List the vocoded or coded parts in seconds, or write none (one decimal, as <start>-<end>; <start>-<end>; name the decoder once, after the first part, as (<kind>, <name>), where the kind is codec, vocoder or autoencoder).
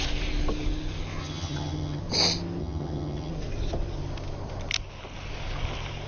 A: 1.2-2.0 (vocoder, HiFi-GAN); 2.6-3.3